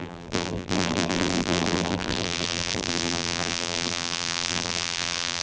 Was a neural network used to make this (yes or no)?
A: yes